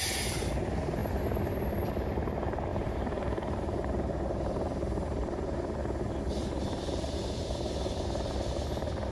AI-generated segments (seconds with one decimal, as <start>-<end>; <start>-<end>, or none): 2.7-8.0